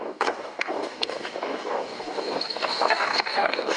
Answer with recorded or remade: remade